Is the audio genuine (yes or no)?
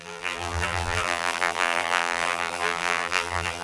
no